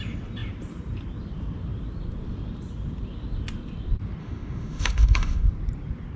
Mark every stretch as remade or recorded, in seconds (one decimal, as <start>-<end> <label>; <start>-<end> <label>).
0.0-4.2 recorded; 4.2-5.5 remade; 5.5-6.2 recorded